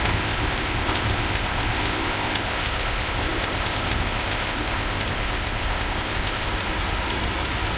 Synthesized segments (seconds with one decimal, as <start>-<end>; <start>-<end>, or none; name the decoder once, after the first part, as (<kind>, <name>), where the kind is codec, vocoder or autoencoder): 0.0-6.5 (codec, ZipCodec)